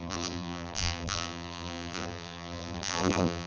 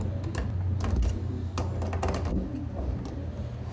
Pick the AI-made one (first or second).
first